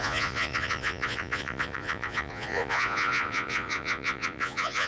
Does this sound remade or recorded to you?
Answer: remade